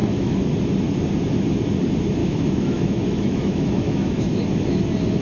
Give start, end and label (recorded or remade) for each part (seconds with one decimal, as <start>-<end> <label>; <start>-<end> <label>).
0.0-0.5 remade; 0.5-2.2 recorded; 2.2-4.8 remade; 4.8-5.2 recorded